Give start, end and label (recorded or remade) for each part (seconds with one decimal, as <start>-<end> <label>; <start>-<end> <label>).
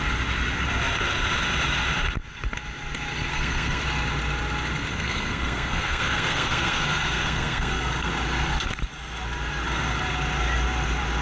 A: 0.0-3.3 recorded; 3.3-3.8 remade; 3.8-4.9 recorded; 4.9-8.1 remade; 8.1-11.2 recorded